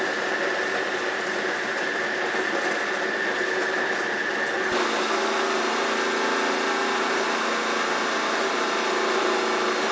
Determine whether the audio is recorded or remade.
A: recorded